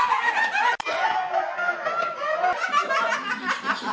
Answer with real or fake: real